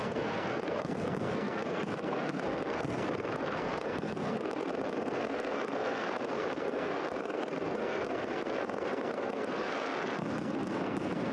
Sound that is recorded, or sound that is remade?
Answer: remade